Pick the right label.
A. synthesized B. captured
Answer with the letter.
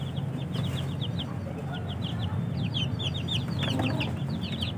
B